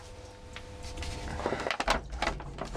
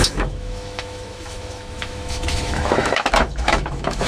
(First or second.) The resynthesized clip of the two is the second